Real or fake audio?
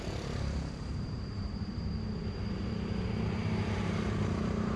fake